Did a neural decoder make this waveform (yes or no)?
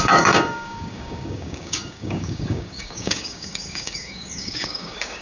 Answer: yes